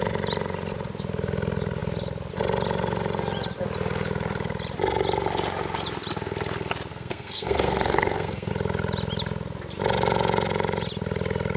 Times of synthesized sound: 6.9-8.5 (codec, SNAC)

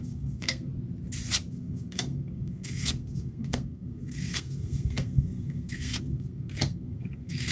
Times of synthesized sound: 0.0-0.7 (codec, SNAC); 1.5-7.5

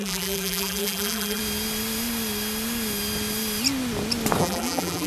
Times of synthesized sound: 0.0-1.4 (vocoder, BigVGAN v2); 4.4-5.1